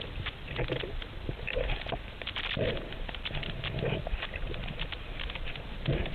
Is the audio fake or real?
real